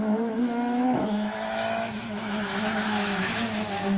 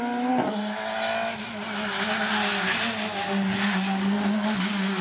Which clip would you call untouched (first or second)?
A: second